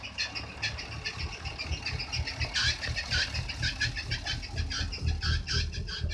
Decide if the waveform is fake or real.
real